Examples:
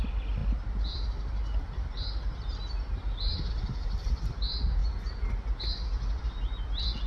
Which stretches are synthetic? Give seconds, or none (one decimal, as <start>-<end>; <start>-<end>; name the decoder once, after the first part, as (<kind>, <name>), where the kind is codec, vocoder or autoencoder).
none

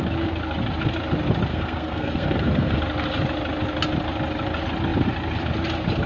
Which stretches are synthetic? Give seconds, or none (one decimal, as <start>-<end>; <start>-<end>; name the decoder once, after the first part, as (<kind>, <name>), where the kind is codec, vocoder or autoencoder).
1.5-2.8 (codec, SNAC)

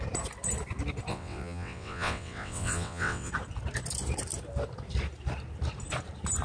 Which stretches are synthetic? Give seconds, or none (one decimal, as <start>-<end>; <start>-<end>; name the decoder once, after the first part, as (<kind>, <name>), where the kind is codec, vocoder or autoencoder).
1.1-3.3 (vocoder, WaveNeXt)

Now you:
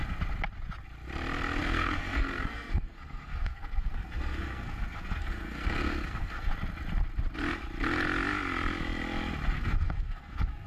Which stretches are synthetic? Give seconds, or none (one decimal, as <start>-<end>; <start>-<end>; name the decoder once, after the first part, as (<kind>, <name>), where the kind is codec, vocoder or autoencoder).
1.6-6.5 (codec, SNAC); 9.5-10.7